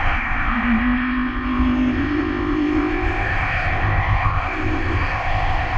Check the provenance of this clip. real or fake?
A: fake